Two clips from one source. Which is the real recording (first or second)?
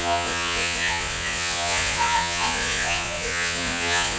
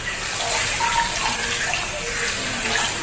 second